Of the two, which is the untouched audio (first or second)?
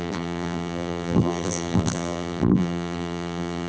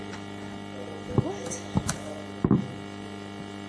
second